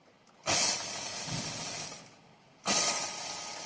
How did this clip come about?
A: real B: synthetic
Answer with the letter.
A